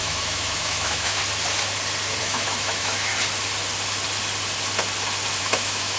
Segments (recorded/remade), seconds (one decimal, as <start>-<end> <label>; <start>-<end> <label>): 0.0-1.2 remade; 1.2-2.2 recorded; 2.2-3.1 remade; 3.1-5.4 recorded; 5.4-6.0 remade